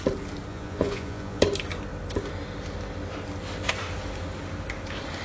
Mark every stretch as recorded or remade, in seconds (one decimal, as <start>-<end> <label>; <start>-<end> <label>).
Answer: 0.0-0.5 recorded; 0.5-1.4 remade; 1.4-5.2 recorded